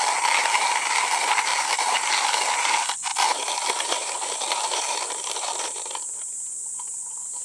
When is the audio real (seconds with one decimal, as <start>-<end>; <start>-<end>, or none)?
0.0-0.4; 0.9-1.5; 2.1-3.1; 7.0-7.4